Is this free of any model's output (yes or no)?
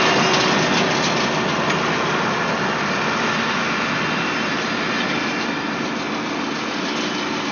yes